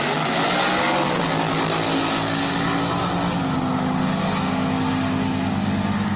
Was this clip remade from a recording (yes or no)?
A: no